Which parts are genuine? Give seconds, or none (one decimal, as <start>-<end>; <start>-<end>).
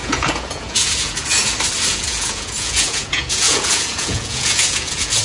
1.4-1.9